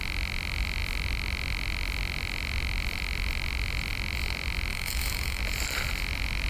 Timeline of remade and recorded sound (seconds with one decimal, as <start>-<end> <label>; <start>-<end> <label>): 0.0-4.7 recorded; 4.7-5.4 remade; 5.4-6.5 recorded